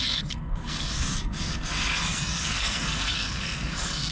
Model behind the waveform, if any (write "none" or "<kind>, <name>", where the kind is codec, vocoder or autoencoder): codec, SNAC